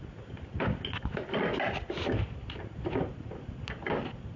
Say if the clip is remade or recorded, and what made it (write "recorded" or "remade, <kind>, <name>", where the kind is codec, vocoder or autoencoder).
recorded